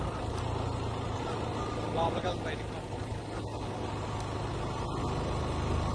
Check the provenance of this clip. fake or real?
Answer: real